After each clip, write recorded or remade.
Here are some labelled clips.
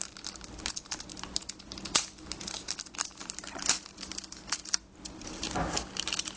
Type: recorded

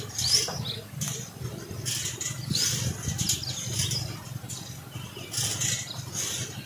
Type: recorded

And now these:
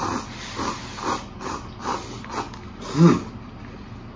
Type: recorded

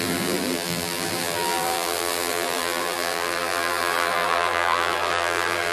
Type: remade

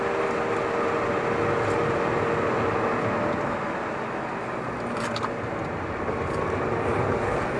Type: recorded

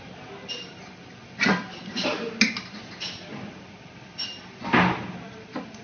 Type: recorded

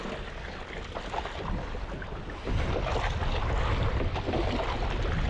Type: recorded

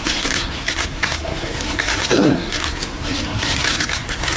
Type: remade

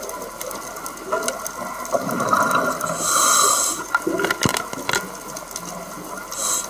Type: recorded